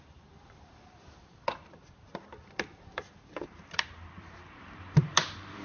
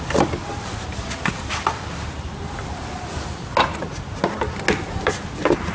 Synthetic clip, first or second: first